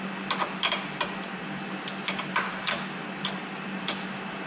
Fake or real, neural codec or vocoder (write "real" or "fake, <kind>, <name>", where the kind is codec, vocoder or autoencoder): real